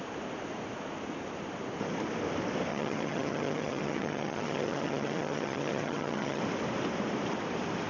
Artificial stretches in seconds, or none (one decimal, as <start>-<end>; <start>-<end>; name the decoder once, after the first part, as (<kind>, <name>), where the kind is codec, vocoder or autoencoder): 2.7-6.4 (vocoder, HiFi-GAN)